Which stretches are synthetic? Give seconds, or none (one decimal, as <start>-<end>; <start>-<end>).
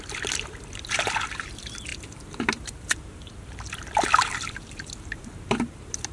0.0-6.1